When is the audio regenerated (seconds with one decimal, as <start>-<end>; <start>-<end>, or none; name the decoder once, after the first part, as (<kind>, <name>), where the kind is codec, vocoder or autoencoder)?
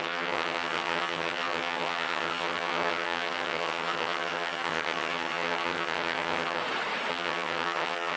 0.0-6.6 (vocoder, HiFi-GAN); 7.1-8.2